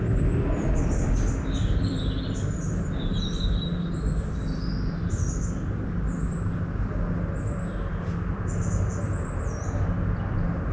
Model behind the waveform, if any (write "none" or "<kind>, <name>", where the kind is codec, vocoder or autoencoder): none